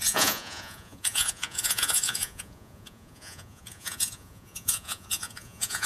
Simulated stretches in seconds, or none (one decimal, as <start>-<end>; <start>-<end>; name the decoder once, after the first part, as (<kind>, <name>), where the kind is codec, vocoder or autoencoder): 0.0-5.9 (vocoder, Vocos)